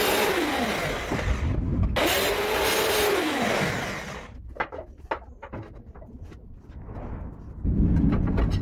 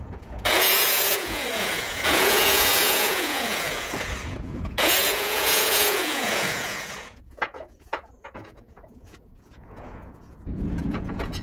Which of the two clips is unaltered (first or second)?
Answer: first